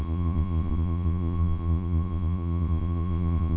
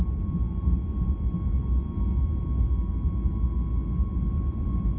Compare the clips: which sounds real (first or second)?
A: second